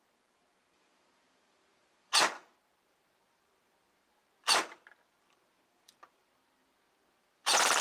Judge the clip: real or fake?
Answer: fake